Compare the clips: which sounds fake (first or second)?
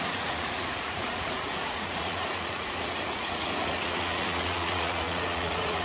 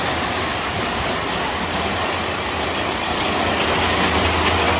first